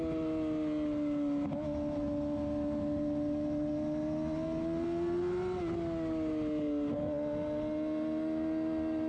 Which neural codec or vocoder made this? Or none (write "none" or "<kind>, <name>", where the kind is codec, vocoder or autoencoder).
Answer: none